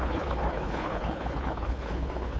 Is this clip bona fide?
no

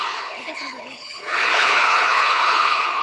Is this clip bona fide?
no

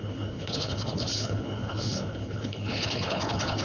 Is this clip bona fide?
no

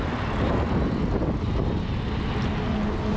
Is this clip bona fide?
yes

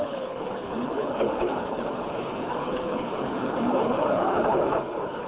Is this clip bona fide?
no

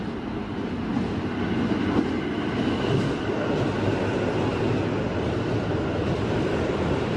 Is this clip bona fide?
yes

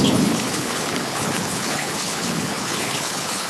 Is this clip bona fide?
no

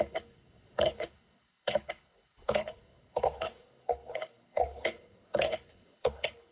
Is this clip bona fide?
no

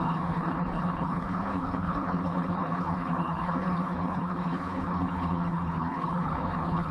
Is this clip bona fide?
no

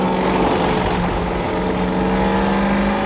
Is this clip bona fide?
yes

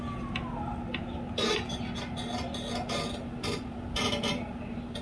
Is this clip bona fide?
yes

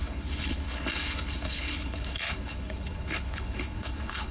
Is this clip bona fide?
no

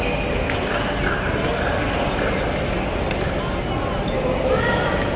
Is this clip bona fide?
yes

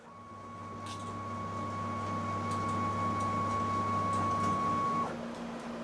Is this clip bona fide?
yes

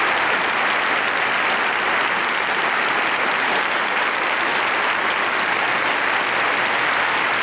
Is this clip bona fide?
yes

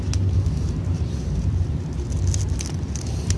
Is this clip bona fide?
yes